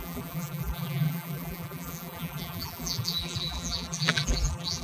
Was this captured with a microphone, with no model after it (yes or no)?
no